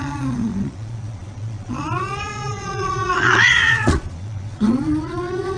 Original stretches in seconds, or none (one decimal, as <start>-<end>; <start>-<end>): none